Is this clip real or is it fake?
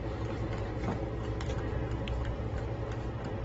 fake